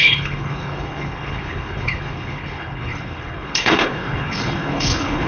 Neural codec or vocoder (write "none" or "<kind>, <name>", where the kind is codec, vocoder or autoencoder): codec, HILCodec